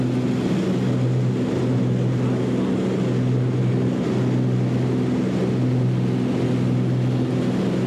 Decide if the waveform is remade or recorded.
recorded